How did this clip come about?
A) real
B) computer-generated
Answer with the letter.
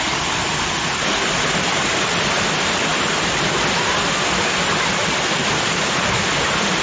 B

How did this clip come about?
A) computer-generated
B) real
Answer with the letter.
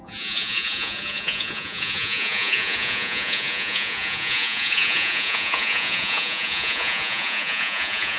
A